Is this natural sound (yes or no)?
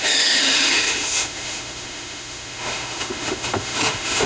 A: no